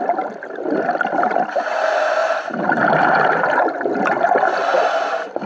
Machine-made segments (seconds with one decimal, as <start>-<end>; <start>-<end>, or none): none